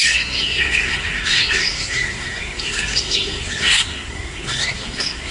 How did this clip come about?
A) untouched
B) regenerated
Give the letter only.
B